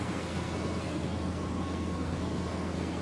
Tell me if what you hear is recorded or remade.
remade